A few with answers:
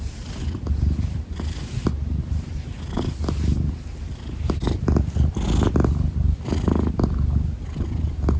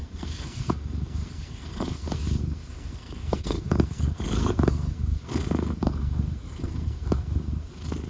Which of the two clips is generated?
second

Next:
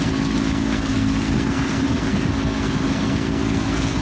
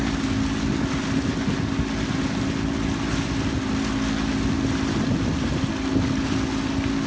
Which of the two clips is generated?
first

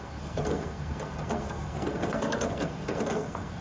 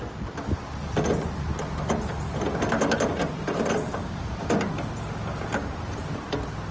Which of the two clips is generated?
first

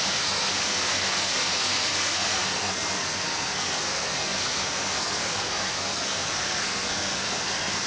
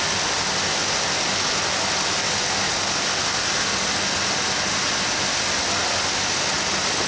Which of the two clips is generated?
first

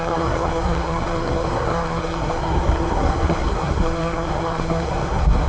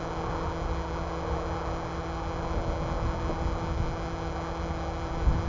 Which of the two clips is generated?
first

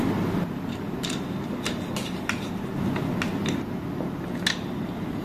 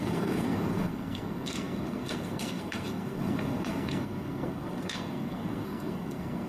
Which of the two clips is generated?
second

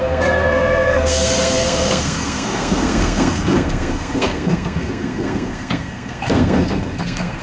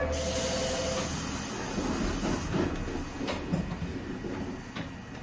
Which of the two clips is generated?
first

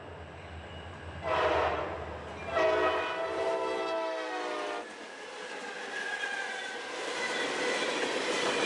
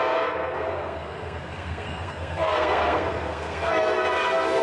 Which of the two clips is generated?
second